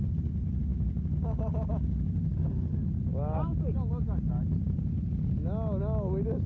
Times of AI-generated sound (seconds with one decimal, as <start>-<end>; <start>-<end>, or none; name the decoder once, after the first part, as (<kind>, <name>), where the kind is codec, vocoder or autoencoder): none